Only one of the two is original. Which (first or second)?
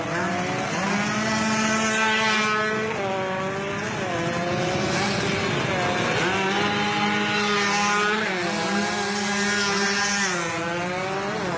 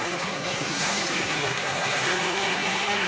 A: first